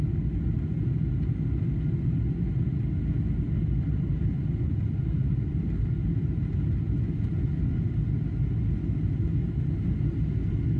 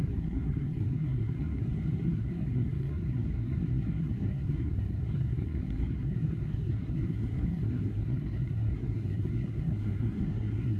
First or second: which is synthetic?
second